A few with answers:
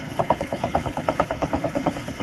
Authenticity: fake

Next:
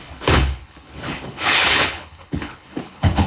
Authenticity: fake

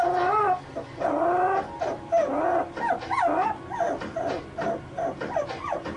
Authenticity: real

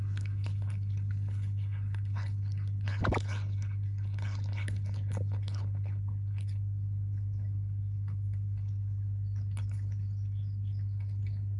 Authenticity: fake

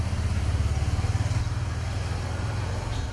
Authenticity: real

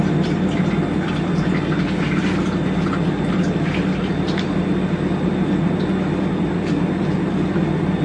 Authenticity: real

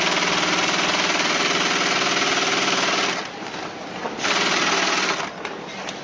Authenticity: real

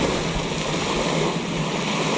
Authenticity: real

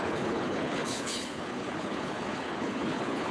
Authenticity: fake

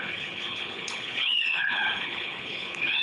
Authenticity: fake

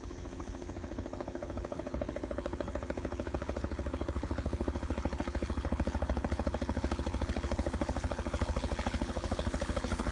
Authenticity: fake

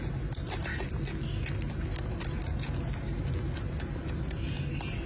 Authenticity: real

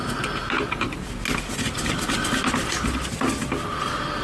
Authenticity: real